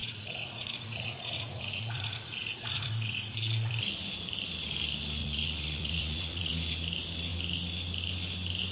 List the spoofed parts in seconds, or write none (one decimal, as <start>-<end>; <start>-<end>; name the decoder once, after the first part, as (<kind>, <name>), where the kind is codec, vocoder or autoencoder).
0.0-3.7 (vocoder, Vocos); 5.2-6.5